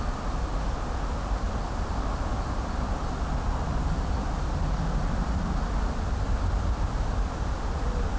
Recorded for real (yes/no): yes